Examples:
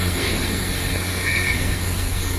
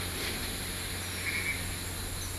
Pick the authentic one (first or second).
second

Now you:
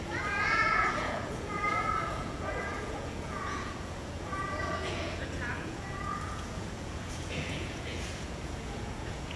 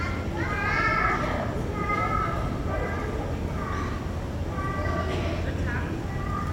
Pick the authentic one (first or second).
second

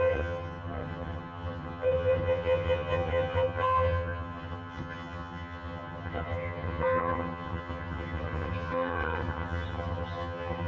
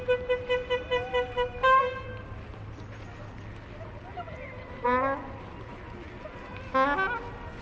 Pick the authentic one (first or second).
second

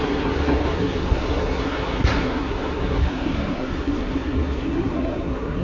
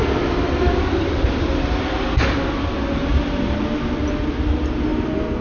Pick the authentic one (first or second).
second